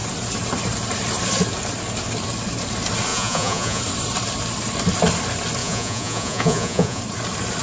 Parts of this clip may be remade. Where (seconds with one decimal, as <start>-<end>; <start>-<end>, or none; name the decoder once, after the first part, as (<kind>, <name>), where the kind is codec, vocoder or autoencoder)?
3.1-3.8 (vocoder, Vocos); 5.6-7.0